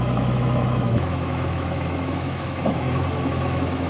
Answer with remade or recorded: remade